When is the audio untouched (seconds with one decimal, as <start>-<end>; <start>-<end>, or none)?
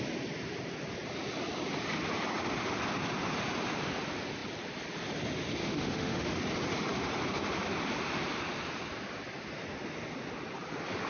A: 0.0-5.6; 6.4-11.1